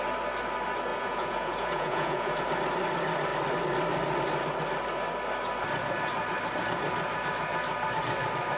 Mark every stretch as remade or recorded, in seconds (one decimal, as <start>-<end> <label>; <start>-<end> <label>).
0.0-0.9 recorded; 0.9-2.4 remade; 2.4-8.6 recorded